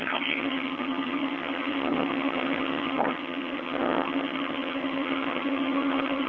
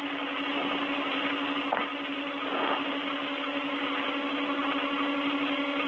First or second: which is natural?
second